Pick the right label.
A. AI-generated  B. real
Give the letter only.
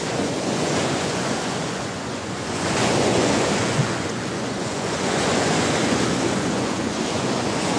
A